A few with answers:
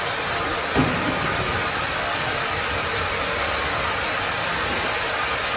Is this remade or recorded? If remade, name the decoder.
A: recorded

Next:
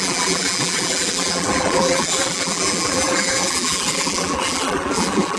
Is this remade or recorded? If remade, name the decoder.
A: remade, vocoder, BigVGAN v2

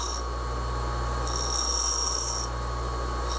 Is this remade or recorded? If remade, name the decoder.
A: recorded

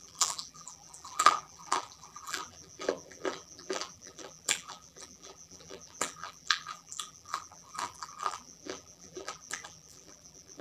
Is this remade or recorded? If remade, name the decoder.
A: remade, vocoder, BigVGAN v2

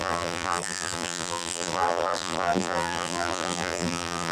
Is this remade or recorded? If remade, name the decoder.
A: remade, vocoder, BigVGAN v2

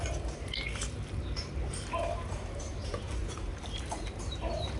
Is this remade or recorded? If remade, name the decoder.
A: remade, vocoder, BigVGAN v2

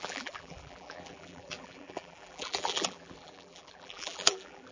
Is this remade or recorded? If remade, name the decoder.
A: remade, vocoder, BigVGAN v2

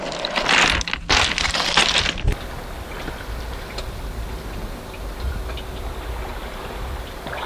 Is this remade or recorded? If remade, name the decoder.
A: recorded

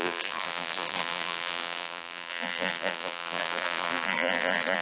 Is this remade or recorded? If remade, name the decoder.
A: remade, vocoder, BigVGAN v2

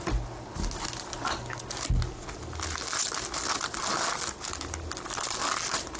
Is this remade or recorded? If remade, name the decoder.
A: recorded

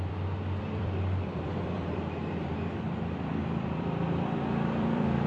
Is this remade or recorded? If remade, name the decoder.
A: remade, vocoder, BigVGAN v2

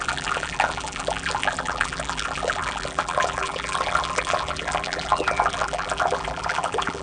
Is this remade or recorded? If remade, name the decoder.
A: remade, vocoder, BigVGAN v2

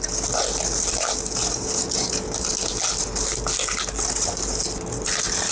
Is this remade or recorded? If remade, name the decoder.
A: recorded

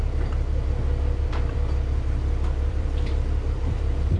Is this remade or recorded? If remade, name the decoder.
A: remade, vocoder, BigVGAN v2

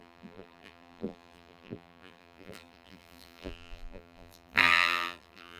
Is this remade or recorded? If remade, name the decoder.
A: remade, vocoder, BigVGAN v2